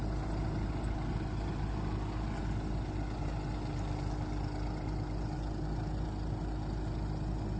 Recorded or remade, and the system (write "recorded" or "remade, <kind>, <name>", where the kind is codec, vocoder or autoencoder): recorded